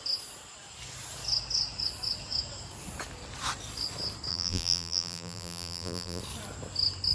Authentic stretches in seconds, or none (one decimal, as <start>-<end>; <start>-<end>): 0.0-4.3; 6.2-7.1